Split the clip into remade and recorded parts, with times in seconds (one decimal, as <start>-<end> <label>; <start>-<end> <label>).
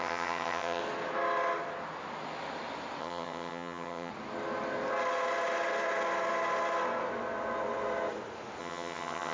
0.0-0.8 remade; 0.8-3.0 recorded; 3.0-4.1 remade; 4.1-8.6 recorded; 8.6-9.3 remade